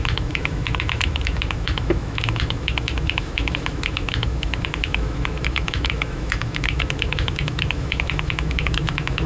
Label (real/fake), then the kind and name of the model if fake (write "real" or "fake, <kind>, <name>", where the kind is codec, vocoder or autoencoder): fake, autoencoder, DAC-VAE